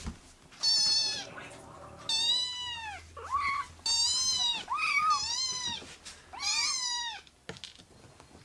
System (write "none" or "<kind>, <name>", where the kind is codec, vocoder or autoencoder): none